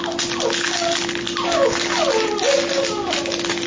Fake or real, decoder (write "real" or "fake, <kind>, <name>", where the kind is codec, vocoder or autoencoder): real